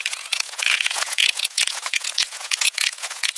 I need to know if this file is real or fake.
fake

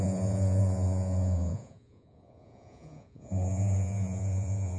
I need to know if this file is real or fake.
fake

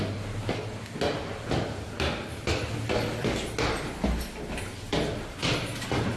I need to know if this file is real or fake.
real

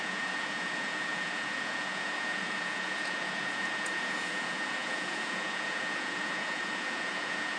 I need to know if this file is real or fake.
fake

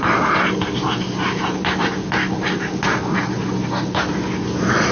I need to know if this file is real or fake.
real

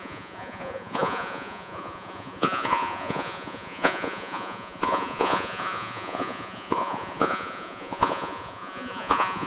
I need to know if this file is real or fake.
fake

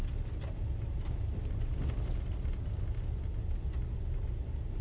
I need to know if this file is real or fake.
real